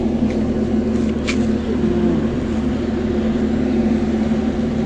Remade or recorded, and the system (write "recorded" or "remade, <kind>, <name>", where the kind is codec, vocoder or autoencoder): recorded